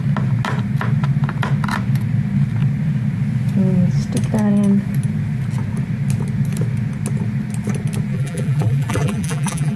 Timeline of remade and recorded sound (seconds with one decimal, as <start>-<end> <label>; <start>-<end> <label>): 0.0-8.1 recorded; 8.1-9.8 remade